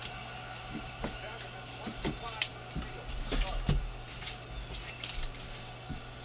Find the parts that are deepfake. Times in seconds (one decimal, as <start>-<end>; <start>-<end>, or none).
none